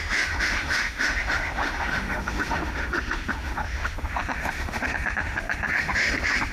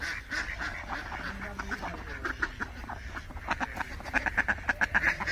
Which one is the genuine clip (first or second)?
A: second